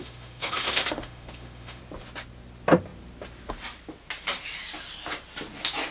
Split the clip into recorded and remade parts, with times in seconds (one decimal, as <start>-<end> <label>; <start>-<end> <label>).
0.0-1.8 remade; 1.8-5.9 recorded